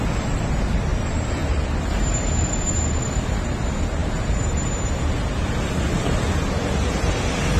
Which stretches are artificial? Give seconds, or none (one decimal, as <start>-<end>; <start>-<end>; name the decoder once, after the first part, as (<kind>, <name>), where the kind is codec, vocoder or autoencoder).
none